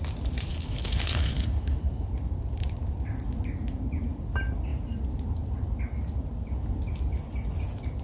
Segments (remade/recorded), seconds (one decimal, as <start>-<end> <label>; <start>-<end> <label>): 0.0-0.5 recorded; 0.5-2.1 remade; 2.1-8.0 recorded